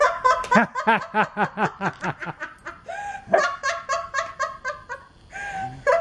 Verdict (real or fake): real